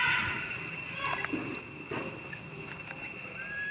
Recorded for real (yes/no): yes